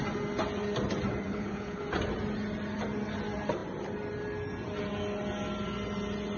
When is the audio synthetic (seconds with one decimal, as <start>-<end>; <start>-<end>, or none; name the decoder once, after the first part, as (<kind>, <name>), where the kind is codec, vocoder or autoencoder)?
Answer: 1.3-1.8 (codec, HILCodec)